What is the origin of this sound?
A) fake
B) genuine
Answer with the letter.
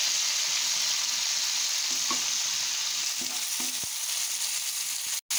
B